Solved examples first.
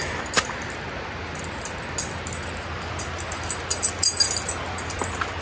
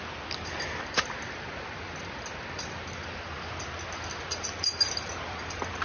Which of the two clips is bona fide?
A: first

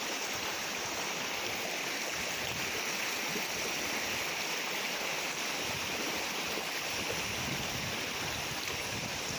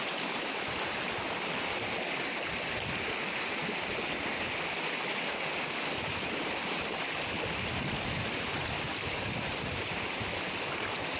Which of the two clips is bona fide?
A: first